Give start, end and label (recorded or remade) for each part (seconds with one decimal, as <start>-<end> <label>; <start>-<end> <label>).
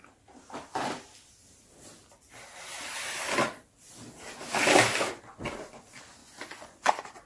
0.0-6.2 recorded; 6.2-7.3 remade